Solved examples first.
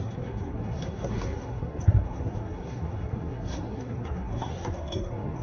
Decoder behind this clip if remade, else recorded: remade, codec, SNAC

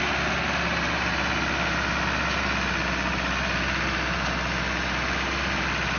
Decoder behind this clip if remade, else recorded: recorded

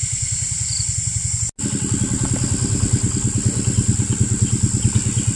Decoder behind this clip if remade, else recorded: recorded